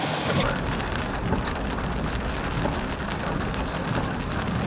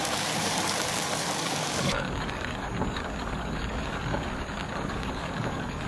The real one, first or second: first